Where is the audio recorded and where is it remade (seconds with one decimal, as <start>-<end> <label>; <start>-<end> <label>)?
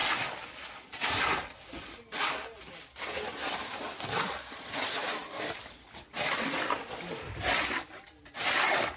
0.0-9.0 recorded